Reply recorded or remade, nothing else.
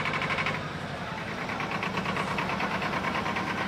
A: recorded